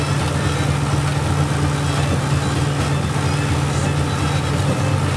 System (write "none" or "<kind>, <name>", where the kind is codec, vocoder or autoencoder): none